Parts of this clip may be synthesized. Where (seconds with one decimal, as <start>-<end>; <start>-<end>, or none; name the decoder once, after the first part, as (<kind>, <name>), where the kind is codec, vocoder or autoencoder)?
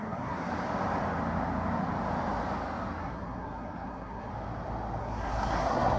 0.0-0.5 (codec, SNAC); 3.0-4.3; 5.0-6.0